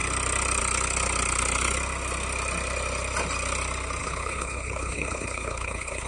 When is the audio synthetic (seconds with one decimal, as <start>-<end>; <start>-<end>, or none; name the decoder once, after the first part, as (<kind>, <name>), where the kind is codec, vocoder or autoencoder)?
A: 4.0-6.1 (codec, HILCodec)